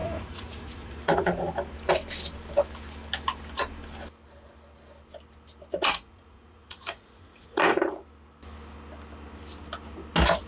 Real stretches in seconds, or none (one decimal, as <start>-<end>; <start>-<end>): 1.5-5.9; 7.8-10.5

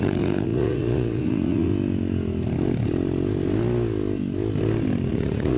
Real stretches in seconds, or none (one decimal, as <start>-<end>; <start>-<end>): 1.7-5.1

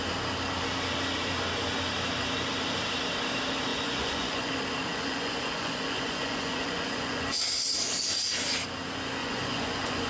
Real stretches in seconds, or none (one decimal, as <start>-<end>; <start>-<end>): 0.0-3.7; 4.5-4.9; 7.4-9.2

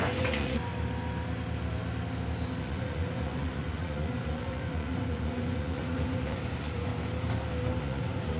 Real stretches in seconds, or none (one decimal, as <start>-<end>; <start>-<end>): 0.7-2.6; 6.9-7.8

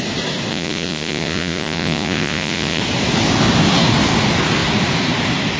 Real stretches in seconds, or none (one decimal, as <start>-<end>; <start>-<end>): 0.0-0.5; 2.8-5.6

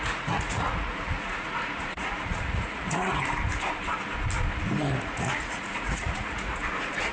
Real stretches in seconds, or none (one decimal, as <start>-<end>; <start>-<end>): 3.2-4.9